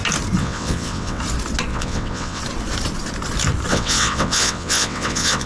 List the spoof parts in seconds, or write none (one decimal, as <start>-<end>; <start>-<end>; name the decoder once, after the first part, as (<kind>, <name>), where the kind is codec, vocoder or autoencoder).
0.4-1.2 (vocoder, WaveNeXt); 1.7-2.4; 3.7-5.5